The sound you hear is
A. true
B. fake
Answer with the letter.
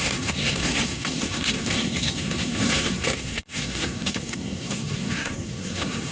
B